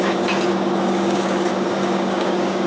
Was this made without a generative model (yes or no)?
no